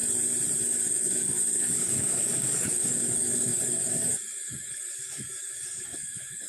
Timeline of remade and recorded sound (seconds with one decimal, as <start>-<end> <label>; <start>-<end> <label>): 0.0-0.6 recorded; 0.6-6.5 remade